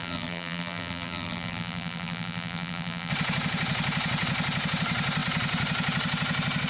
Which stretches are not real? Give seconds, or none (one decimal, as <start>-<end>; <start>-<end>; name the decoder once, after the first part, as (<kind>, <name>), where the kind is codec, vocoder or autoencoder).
0.0-3.1 (vocoder, BigVGAN v2)